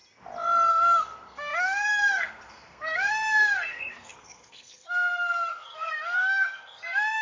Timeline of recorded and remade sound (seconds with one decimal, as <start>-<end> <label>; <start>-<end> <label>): 0.0-0.7 recorded; 0.7-7.2 remade